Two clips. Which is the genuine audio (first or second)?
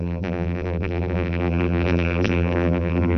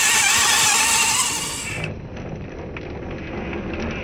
second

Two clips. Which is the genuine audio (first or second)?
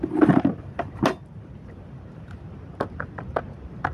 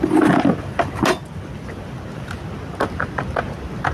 second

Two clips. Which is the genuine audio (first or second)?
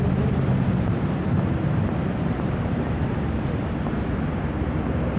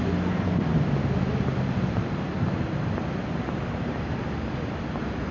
second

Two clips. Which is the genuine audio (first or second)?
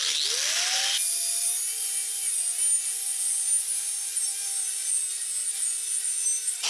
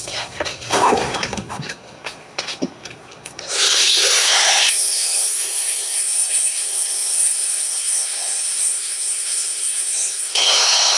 first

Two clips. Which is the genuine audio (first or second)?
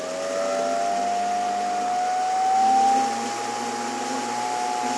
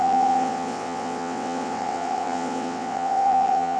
first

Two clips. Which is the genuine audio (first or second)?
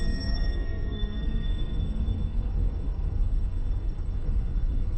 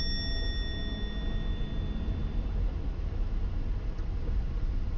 second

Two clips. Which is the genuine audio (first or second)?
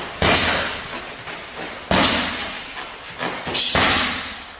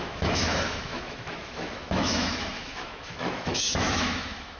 first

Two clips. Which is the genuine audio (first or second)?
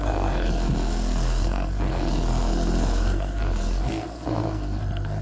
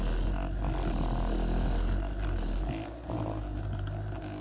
second